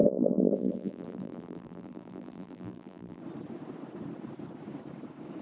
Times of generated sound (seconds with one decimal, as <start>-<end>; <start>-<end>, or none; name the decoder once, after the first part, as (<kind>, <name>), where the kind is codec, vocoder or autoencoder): 0.0-3.2 (vocoder, BigVGAN v2)